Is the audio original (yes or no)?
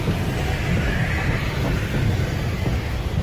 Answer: yes